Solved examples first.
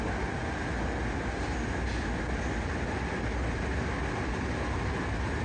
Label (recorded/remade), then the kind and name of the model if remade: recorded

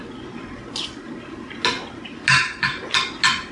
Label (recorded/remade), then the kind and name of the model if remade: recorded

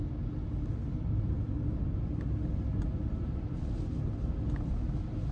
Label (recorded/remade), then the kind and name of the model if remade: recorded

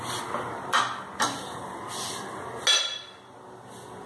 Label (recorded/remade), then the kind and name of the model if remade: recorded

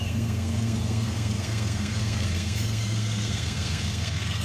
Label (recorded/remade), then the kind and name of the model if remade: remade, codec, SNAC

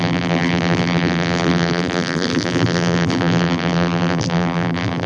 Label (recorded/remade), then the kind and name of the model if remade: remade, vocoder, BigVGAN v2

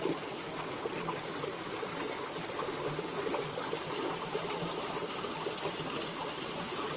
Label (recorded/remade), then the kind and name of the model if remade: recorded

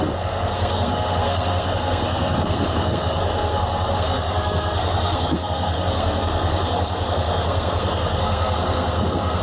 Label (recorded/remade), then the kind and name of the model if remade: remade, codec, SNAC